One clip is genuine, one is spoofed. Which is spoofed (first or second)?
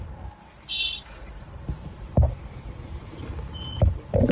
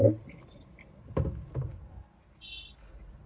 first